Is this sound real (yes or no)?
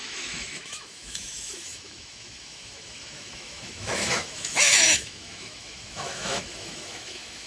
no